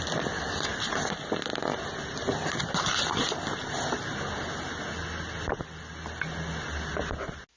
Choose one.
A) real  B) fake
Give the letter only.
A